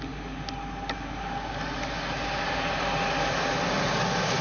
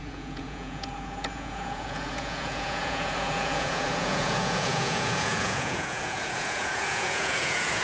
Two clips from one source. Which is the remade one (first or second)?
second